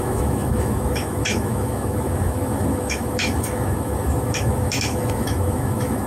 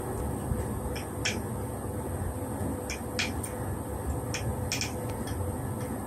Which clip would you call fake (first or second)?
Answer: first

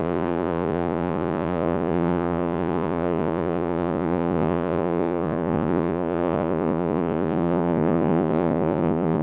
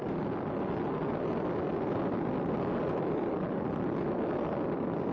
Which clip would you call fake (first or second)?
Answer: first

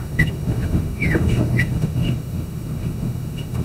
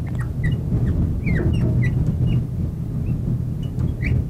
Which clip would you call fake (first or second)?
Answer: first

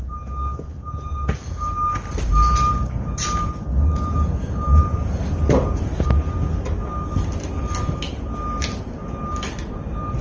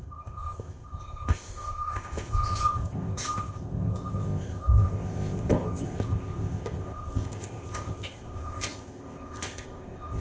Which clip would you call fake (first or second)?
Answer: second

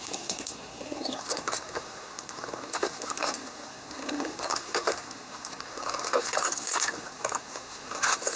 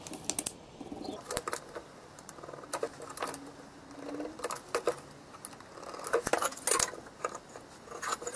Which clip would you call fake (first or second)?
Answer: first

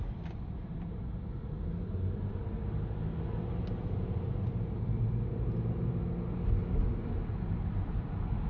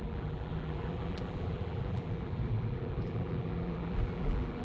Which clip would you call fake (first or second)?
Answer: second